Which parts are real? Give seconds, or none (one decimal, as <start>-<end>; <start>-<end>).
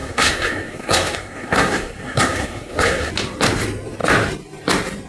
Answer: 3.1-5.1